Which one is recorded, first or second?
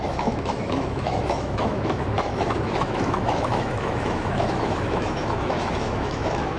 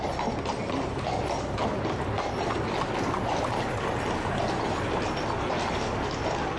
second